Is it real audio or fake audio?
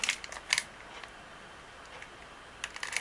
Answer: real